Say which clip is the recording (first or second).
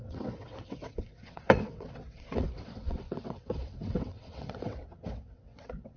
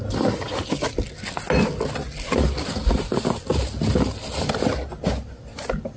second